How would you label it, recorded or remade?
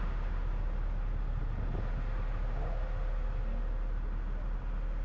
recorded